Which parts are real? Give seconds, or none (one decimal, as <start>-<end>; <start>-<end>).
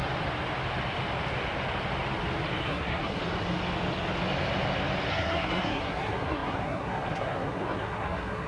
0.0-2.6; 3.2-5.1